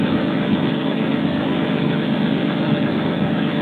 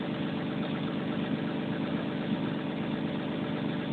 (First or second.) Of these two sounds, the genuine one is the second